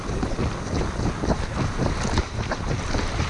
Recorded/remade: recorded